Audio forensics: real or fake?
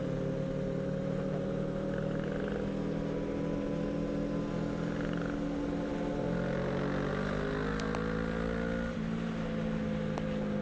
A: real